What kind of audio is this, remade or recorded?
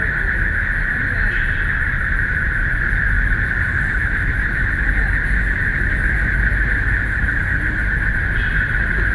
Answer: recorded